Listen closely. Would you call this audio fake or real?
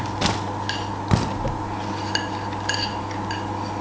real